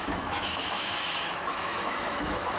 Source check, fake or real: fake